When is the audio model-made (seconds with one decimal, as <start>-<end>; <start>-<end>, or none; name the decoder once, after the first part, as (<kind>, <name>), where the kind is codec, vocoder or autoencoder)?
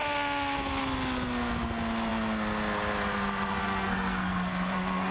3.6-5.1 (codec, SNAC)